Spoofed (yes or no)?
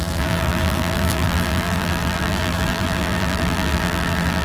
yes